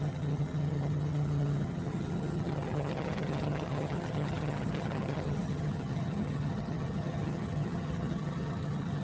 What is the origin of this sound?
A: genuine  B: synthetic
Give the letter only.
B